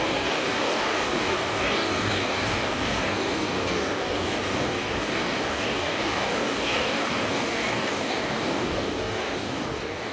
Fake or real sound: fake